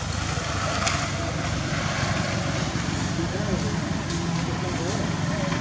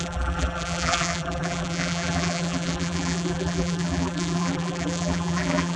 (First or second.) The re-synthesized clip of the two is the second